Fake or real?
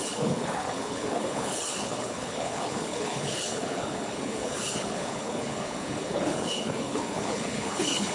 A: fake